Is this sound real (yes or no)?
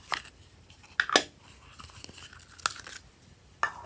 yes